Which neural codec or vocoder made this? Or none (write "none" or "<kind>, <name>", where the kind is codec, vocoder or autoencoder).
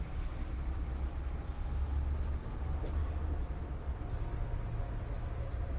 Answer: none